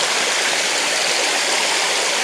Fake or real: real